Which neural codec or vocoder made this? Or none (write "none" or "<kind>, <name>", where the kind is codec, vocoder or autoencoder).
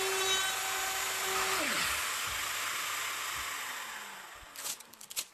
none